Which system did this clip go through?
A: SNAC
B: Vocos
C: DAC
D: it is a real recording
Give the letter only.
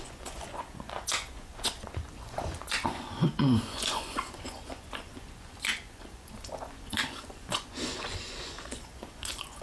B